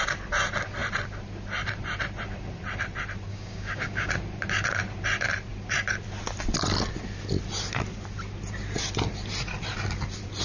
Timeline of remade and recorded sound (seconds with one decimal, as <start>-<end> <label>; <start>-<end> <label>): 0.0-3.3 recorded; 3.3-4.1 remade; 4.1-10.4 recorded